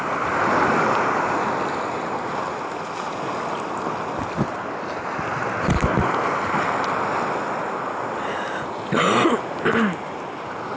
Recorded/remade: recorded